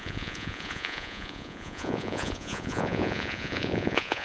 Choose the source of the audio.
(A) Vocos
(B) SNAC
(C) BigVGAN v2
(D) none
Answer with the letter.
A